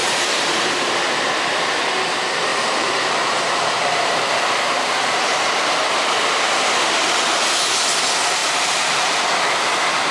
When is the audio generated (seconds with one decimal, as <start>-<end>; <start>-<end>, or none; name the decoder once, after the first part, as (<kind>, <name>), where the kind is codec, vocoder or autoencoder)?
0.0-0.9 (vocoder, BigVGAN v2); 2.5-5.5; 8.4-9.2